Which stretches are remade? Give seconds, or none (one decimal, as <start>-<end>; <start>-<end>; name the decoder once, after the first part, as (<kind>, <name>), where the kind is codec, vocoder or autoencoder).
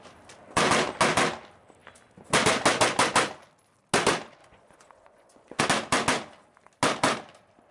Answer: 4.4-5.6 (vocoder, Vocos)